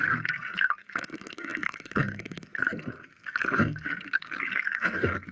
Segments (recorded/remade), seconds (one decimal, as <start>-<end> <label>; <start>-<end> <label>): 0.0-5.3 remade

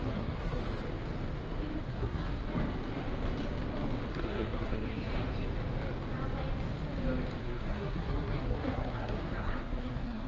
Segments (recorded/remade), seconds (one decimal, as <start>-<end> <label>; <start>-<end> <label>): 0.0-0.6 remade; 0.6-1.8 recorded; 1.8-2.4 remade; 2.4-4.1 recorded; 4.1-5.1 remade; 5.1-7.4 recorded; 7.4-10.3 remade